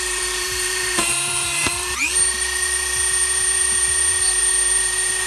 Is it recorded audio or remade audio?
remade